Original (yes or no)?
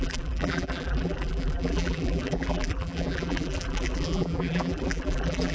no